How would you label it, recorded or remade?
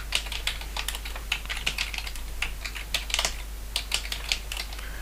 recorded